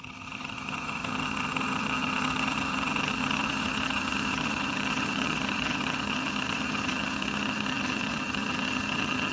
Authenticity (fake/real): fake